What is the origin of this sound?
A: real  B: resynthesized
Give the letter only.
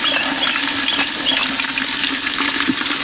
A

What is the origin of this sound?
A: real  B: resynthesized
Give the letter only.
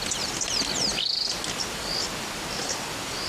A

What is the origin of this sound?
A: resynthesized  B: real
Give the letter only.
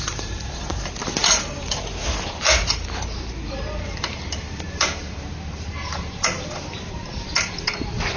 A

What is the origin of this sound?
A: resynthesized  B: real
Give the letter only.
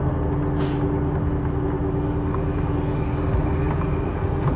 B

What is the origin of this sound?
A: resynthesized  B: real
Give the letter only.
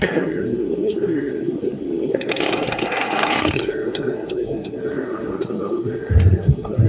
A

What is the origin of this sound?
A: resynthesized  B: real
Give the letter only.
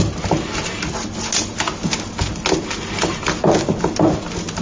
B